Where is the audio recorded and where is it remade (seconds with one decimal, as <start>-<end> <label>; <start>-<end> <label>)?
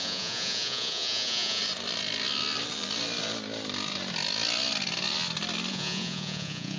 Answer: 0.0-1.6 remade; 1.6-5.7 recorded; 5.7-6.8 remade